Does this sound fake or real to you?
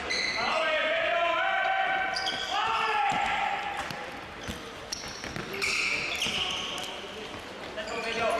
real